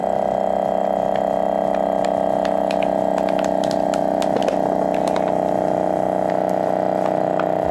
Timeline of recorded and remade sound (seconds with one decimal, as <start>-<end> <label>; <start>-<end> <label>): 0.0-7.7 recorded